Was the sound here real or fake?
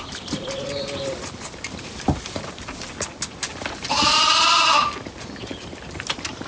real